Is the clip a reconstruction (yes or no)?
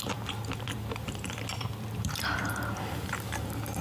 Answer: yes